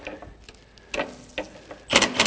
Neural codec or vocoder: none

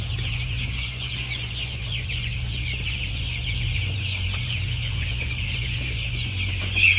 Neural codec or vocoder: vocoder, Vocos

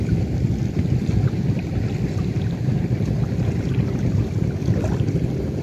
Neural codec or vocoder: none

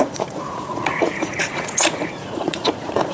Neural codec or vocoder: vocoder, Vocos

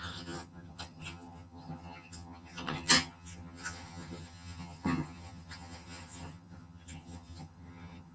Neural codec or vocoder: vocoder, HiFi-GAN